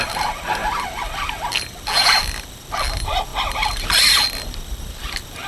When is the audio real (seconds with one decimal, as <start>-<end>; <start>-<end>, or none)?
0.0-5.5

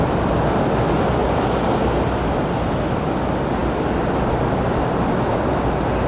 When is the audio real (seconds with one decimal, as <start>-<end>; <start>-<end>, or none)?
0.0-6.1

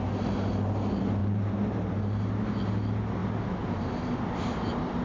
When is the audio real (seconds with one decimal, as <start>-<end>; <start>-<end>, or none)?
0.0-1.2; 2.2-5.0

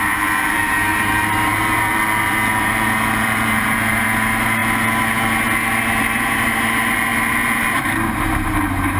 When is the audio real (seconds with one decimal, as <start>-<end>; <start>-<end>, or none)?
4.6-6.0

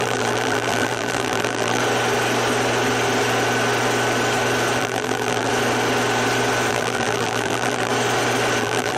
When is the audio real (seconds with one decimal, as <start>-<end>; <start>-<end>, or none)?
1.8-4.8; 5.5-6.7; 7.9-8.6

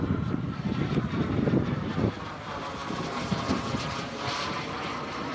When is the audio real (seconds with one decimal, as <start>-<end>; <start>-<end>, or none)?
none

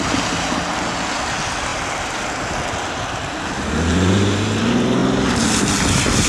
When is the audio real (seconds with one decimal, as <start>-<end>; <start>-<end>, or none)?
0.0-3.9; 4.6-6.3

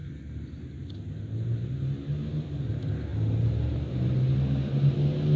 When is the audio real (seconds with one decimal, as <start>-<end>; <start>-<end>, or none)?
0.0-5.4